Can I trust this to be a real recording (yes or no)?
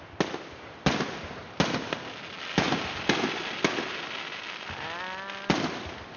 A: yes